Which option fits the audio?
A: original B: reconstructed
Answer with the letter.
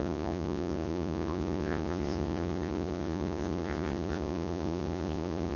B